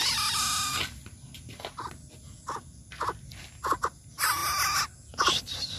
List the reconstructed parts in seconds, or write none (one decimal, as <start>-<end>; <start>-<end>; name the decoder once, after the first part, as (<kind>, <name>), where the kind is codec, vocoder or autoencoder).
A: none